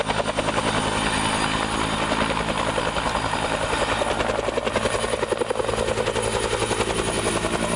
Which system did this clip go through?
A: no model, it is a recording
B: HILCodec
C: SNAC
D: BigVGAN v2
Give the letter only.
A